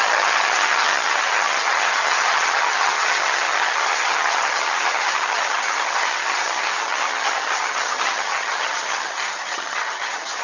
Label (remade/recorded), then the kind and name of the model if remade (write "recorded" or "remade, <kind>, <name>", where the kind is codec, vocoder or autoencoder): remade, vocoder, HiFi-GAN